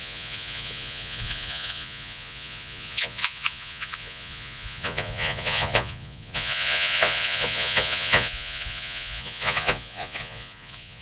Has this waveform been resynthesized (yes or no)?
yes